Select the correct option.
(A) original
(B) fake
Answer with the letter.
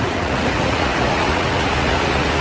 B